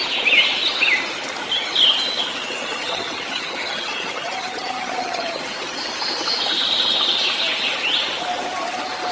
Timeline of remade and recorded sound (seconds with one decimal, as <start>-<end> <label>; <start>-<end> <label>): 0.0-2.8 recorded; 2.8-5.4 remade; 5.4-9.1 recorded